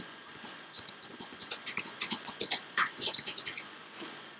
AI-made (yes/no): yes